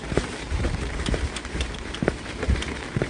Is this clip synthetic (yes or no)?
yes